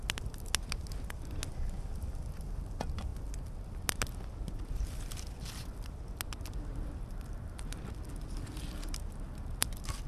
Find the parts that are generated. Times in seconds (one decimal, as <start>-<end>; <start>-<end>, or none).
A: none

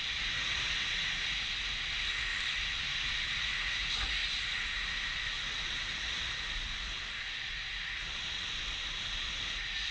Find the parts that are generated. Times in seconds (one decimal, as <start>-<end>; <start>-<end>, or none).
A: none

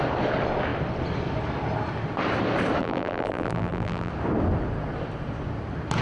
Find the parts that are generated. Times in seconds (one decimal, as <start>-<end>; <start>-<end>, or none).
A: 2.8-4.1

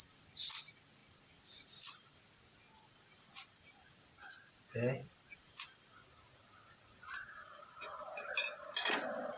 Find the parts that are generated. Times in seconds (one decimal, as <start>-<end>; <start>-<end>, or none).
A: none